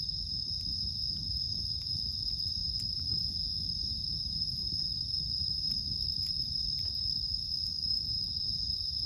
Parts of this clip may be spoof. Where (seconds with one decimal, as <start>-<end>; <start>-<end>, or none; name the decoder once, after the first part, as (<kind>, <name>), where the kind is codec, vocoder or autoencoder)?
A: 2.6-3.3 (vocoder, BigVGAN v2); 4.6-8.4

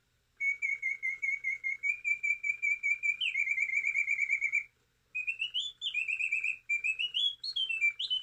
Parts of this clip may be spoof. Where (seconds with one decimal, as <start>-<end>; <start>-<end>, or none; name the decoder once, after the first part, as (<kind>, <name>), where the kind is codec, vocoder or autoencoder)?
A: 0.0-0.6 (vocoder, BigVGAN v2)